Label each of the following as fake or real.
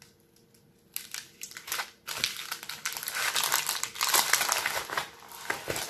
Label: real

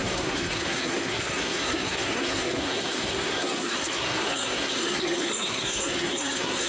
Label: fake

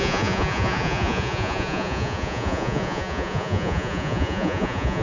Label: fake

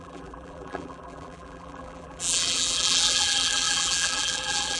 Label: fake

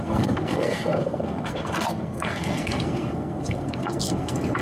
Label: fake